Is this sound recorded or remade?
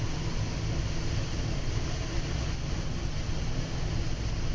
recorded